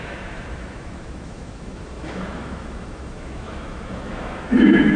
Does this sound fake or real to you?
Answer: fake